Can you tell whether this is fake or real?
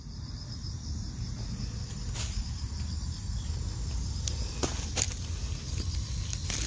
real